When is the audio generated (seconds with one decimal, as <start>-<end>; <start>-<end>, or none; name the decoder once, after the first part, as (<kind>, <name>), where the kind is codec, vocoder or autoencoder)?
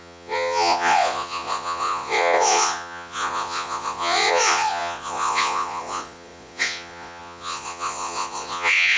0.0-9.0 (vocoder, Vocos)